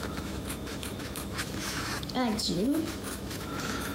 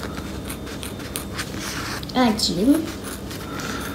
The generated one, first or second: first